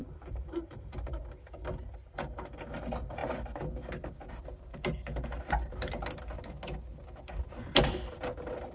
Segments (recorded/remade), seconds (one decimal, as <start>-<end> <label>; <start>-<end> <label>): 0.0-1.2 remade; 1.2-8.7 recorded